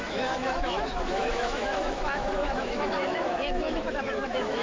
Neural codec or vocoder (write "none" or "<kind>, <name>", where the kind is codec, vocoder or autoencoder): autoencoder, DAC-VAE